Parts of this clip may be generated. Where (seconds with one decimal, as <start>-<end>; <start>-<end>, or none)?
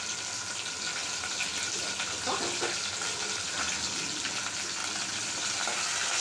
1.0-2.7; 4.8-5.4